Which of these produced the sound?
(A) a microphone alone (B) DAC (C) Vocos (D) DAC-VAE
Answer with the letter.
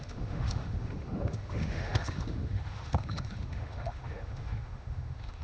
D